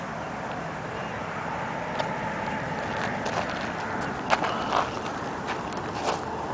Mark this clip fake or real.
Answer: real